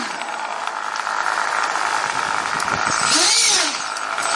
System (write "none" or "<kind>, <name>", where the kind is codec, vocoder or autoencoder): none